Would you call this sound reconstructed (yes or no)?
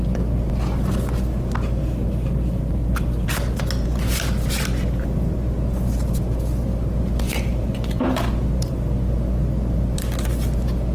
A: no